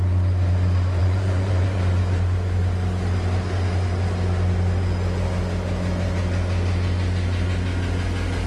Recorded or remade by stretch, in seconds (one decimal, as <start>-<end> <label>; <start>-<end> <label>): 0.0-1.0 recorded; 1.0-1.8 remade; 1.8-8.5 recorded